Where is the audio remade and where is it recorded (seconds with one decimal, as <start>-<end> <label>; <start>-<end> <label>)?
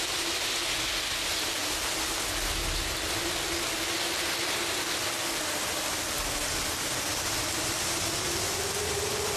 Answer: 0.0-9.4 recorded